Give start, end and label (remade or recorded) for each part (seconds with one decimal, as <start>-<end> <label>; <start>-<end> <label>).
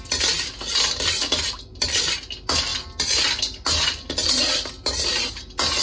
0.0-5.8 recorded